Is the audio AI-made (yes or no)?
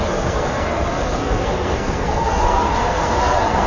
yes